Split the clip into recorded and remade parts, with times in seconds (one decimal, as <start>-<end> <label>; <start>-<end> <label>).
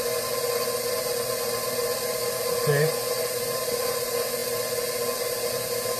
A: 0.0-6.0 recorded